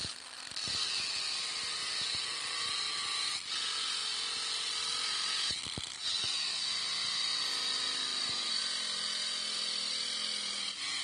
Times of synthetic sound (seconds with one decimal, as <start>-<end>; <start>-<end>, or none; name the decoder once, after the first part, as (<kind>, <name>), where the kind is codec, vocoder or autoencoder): none